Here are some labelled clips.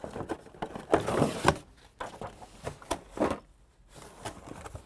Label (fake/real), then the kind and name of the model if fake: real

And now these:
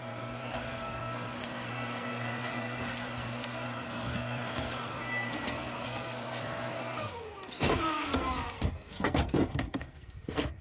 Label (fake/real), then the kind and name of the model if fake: fake, codec, SNAC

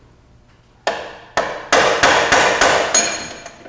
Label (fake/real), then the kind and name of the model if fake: real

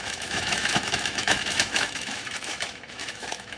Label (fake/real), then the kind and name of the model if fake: fake, autoencoder, DAC-VAE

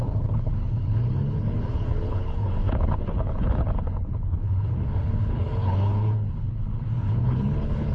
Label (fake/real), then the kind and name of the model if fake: fake, codec, HILCodec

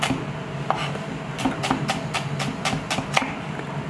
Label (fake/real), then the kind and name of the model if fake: real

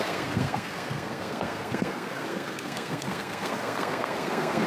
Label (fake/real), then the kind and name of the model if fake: fake, codec, SNAC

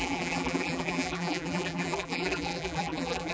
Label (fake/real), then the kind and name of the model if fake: fake, vocoder, BigVGAN v2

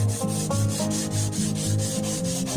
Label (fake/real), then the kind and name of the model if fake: real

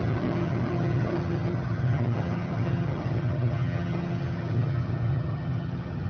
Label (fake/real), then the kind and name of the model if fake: fake, vocoder, HiFi-GAN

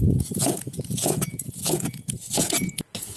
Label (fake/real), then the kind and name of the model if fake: fake, vocoder, Vocos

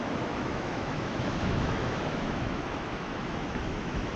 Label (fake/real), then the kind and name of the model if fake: fake, autoencoder, DAC-VAE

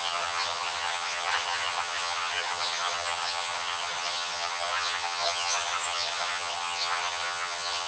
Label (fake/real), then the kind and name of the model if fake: fake, vocoder, HiFi-GAN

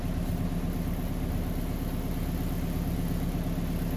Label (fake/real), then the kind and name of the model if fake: real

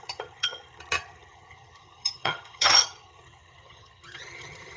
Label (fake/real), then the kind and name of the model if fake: fake, vocoder, HiFi-GAN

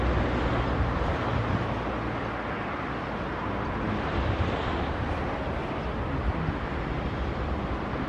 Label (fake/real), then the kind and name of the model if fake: real